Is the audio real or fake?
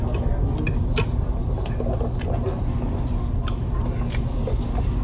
real